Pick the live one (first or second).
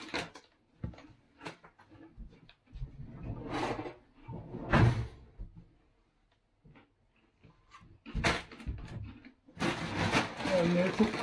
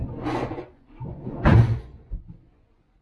first